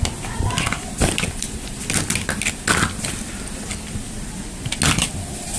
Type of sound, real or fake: real